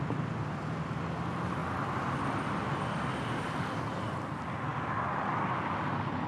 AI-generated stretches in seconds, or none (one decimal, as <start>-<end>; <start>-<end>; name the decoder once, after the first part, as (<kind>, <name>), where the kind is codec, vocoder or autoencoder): none